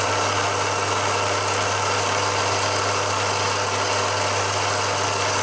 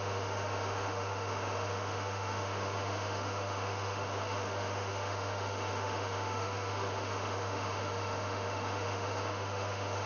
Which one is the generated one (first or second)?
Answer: second